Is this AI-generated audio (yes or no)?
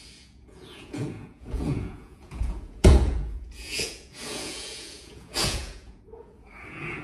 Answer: yes